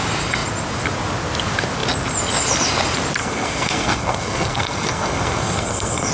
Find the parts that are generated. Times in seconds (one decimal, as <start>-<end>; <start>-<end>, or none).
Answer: 3.2-6.1